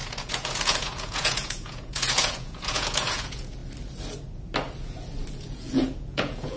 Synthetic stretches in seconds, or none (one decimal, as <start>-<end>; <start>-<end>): 0.0-3.6; 5.3-6.6